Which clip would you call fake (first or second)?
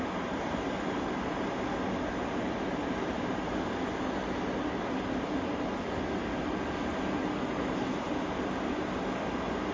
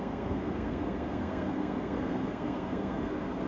second